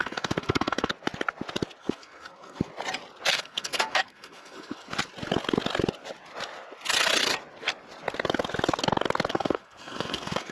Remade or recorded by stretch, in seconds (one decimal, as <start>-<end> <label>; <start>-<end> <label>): 0.0-0.9 remade; 0.9-1.8 recorded; 1.8-2.7 remade; 2.7-3.3 recorded; 3.3-4.9 remade; 4.9-9.3 recorded; 9.3-10.5 remade